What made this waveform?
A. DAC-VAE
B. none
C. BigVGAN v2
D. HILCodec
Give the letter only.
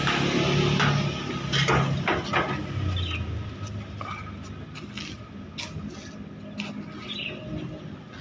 B